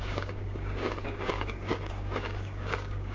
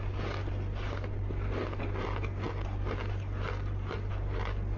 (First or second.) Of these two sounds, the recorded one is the second